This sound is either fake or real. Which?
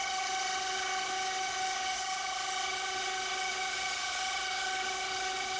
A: fake